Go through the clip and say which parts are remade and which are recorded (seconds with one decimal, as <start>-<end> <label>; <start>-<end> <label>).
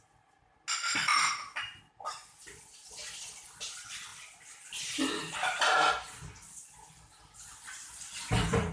0.0-4.1 recorded; 4.1-8.7 remade